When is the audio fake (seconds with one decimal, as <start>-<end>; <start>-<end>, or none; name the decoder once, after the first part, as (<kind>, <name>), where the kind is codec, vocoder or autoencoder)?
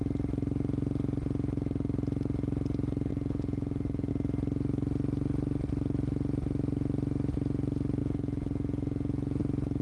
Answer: 3.1-4.1 (vocoder, Vocos); 8.0-9.4